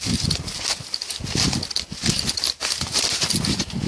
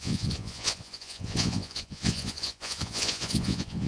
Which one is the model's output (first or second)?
second